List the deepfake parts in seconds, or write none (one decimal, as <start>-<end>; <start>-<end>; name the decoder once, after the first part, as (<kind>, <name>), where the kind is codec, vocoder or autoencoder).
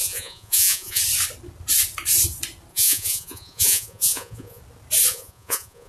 0.0-1.0 (vocoder, Vocos); 2.7-4.6; 5.1-5.9